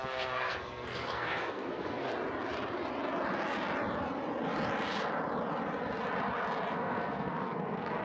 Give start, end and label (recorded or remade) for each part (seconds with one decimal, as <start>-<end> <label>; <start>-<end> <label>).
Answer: 0.0-2.1 remade; 2.1-6.7 recorded; 6.7-8.0 remade